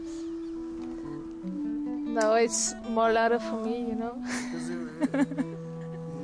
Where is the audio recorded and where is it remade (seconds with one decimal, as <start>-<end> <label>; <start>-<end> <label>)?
0.0-6.2 recorded